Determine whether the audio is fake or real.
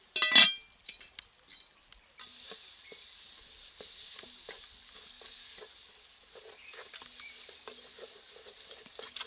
real